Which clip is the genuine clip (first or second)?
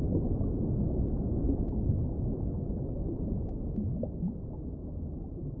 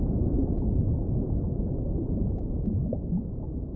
first